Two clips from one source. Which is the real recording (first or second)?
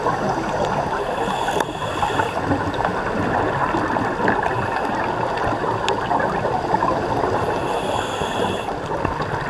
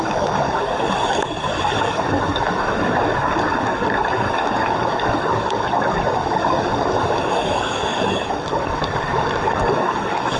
first